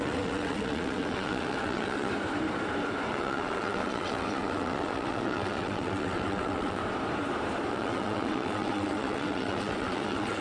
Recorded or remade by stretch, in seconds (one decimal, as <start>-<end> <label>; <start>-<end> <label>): 0.0-2.1 remade; 2.1-3.1 recorded; 3.1-6.8 remade; 6.8-7.7 recorded; 7.7-10.4 remade